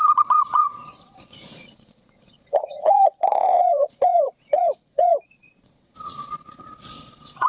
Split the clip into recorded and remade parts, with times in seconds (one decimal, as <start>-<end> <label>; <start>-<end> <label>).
0.0-7.5 remade

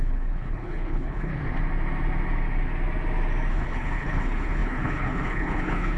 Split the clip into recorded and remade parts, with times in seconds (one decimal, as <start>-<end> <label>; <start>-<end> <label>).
0.0-1.3 remade; 1.3-3.5 recorded; 3.5-6.0 remade